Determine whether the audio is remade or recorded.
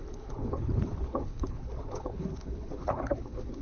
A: remade